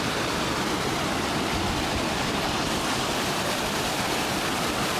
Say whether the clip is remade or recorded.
remade